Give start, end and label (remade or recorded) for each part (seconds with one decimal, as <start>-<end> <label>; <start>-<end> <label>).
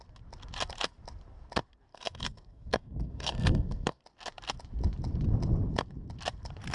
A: 0.0-1.9 recorded; 1.9-4.0 remade; 4.0-6.7 recorded